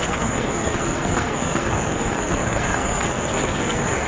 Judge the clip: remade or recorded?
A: remade